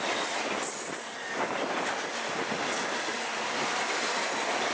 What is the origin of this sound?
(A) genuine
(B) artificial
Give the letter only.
B